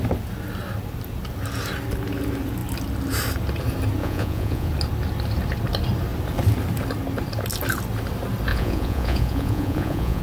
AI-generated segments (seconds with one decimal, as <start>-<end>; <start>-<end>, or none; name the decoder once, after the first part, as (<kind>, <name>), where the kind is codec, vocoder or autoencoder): 4.0-4.7 (vocoder, Vocos); 8.5-10.2